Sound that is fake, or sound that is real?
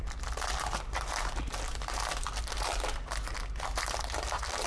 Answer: fake